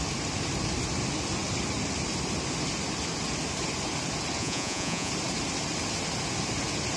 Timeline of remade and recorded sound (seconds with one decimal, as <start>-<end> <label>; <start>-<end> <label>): 0.0-4.4 recorded; 4.4-5.1 remade; 5.1-7.0 recorded